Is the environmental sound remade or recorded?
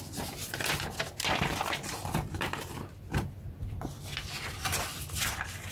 recorded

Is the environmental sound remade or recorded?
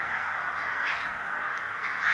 remade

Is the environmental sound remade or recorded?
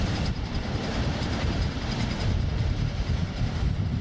remade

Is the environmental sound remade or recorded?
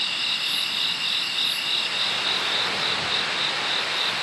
recorded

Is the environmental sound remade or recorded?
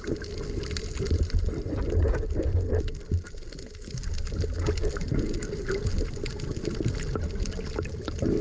recorded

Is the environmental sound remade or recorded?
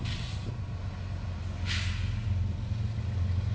recorded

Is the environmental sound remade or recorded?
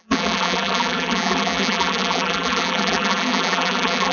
remade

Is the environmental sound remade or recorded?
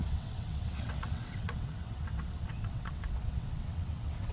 remade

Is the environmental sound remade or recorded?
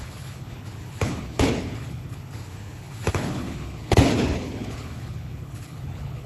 remade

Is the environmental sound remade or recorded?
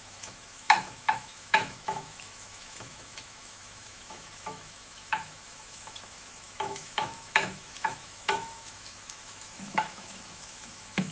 remade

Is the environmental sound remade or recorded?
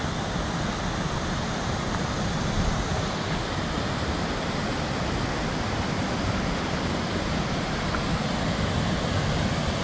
recorded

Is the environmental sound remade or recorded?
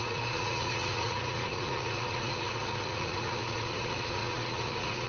remade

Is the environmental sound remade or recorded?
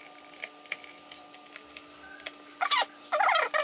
recorded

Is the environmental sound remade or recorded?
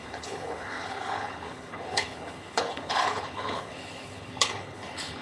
remade